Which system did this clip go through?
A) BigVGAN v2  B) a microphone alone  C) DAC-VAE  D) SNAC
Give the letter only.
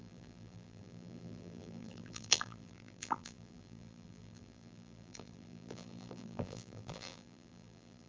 A